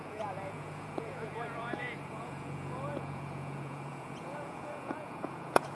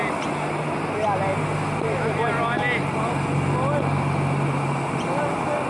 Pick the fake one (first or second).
first